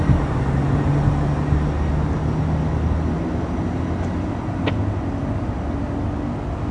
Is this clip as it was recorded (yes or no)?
yes